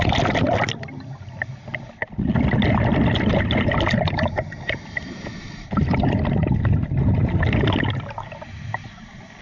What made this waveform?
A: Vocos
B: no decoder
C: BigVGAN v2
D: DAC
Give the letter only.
B